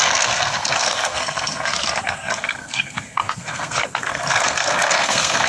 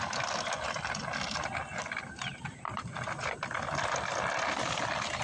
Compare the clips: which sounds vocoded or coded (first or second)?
first